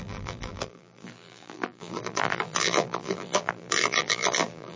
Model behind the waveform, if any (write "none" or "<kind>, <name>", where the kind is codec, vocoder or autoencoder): vocoder, BigVGAN v2